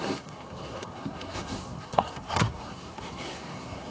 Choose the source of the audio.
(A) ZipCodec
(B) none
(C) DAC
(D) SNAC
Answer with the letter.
D